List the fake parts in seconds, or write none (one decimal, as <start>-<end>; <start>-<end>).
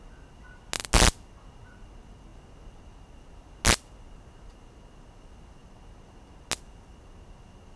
none